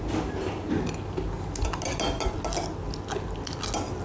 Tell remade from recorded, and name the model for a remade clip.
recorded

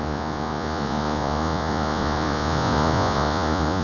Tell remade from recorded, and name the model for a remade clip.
remade, vocoder, Vocos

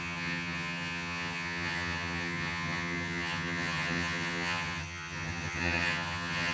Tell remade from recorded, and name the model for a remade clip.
remade, vocoder, HiFi-GAN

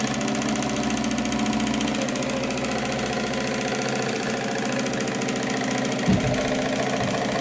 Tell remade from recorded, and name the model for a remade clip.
recorded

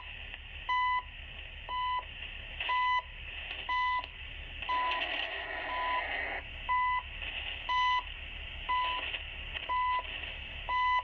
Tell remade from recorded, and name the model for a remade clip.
recorded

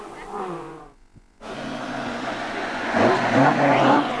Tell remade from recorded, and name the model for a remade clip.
remade, vocoder, Vocos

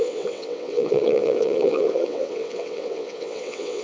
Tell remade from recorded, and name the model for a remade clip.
remade, vocoder, WaveNeXt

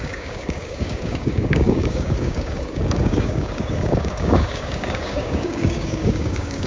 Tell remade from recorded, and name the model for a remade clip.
remade, codec, DAC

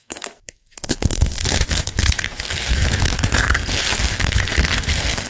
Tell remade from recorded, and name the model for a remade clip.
remade, codec, SNAC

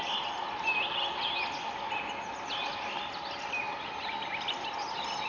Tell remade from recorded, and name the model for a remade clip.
recorded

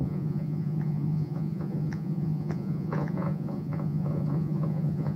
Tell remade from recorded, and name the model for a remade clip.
remade, vocoder, Vocos